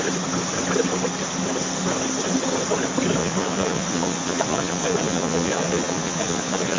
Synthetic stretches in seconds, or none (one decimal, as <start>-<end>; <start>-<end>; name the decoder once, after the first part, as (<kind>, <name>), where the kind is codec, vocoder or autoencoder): 3.2-6.8 (vocoder, Vocos)